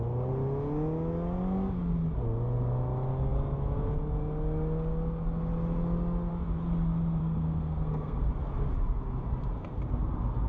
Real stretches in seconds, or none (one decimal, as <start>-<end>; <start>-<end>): 0.0-7.2; 8.3-10.5